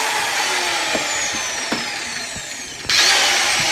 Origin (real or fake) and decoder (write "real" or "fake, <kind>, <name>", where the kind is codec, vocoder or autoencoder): real